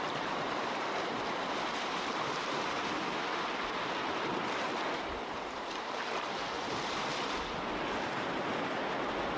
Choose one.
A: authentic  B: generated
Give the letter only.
A